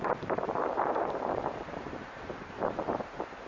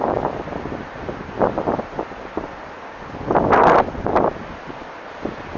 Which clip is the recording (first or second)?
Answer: second